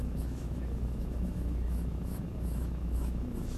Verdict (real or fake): fake